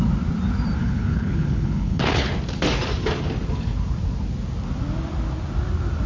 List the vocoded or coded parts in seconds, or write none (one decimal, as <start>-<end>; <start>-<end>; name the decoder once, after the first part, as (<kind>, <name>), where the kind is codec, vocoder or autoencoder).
0.8-2.3 (codec, HILCodec)